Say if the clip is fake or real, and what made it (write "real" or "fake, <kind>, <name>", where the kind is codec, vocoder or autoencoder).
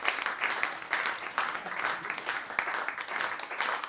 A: real